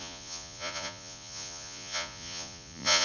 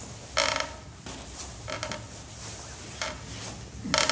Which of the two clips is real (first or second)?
second